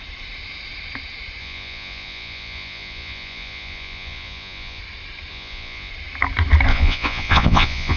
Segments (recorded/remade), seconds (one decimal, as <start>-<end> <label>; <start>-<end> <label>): 0.0-1.4 recorded; 1.4-4.8 remade; 4.8-5.3 recorded; 5.3-5.9 remade; 5.9-6.7 recorded; 6.7-8.0 remade